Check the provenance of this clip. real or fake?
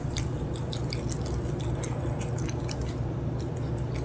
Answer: real